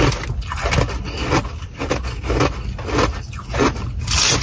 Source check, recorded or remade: recorded